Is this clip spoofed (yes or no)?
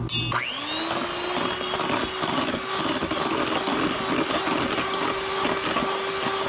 no